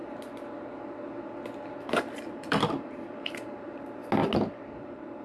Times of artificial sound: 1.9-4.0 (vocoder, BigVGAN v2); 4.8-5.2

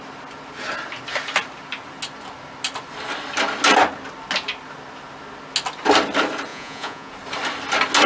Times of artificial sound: 6.5-7.1 (vocoder, Vocos)

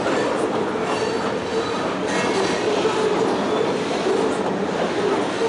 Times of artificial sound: none

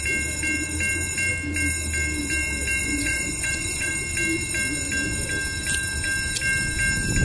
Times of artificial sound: 2.8-3.9 (vocoder, Vocos)

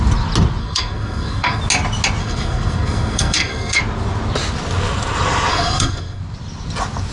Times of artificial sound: 0.6-1.6 (codec, SNAC); 2.2-3.8; 5.5-6.2

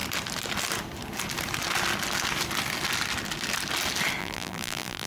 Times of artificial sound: 4.2-5.1 (vocoder, BigVGAN v2)

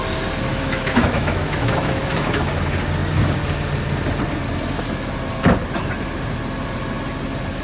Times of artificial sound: 0.5-2.5 (autoencoder, DAC-VAE)

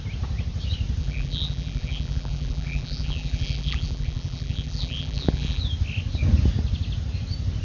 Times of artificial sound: 1.0-5.6 (vocoder, BigVGAN v2)